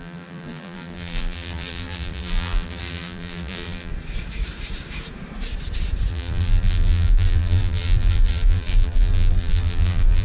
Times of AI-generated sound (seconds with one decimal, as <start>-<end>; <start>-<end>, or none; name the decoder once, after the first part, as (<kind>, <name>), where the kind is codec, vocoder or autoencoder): 0.0-3.9 (vocoder, BigVGAN v2); 6.1-10.2